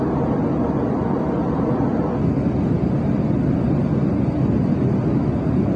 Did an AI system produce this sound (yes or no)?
no